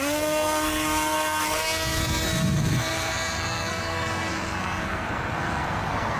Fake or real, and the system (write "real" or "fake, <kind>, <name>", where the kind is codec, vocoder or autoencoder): fake, codec, SNAC